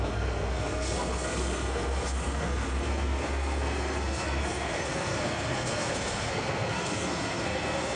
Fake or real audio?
fake